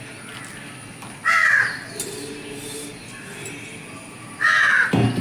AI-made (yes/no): no